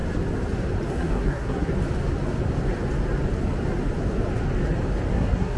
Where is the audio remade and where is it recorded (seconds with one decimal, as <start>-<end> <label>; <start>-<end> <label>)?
0.0-0.9 recorded; 0.9-1.7 remade; 1.7-5.1 recorded; 5.1-5.6 remade